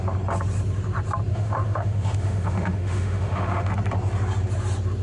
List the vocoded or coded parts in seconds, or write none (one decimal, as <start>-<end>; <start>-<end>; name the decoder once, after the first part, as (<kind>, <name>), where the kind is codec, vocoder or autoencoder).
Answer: 1.3-3.7 (autoencoder, DAC-VAE)